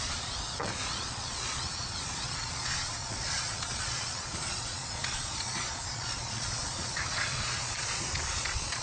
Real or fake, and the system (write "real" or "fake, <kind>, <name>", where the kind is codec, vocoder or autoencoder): fake, vocoder, Vocos